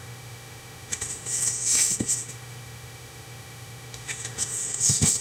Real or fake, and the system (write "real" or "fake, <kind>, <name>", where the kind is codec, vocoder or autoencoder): fake, autoencoder, DAC-VAE